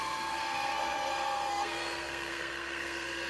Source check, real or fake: fake